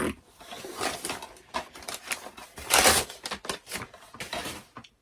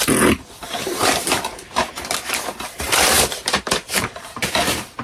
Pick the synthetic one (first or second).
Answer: second